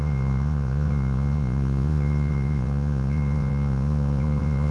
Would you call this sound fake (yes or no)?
yes